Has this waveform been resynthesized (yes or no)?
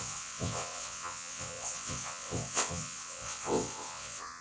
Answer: yes